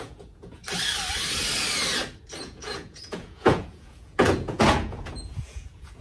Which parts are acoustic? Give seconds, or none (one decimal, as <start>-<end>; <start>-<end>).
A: 0.6-2.4